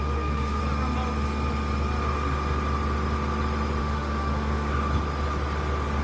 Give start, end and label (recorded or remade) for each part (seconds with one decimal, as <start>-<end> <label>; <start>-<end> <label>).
0.0-0.6 remade; 0.6-3.8 recorded; 3.8-4.7 remade; 4.7-6.0 recorded